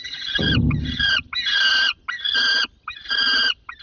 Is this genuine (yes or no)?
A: yes